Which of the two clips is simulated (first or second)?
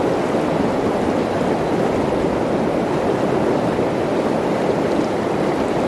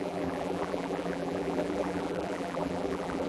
second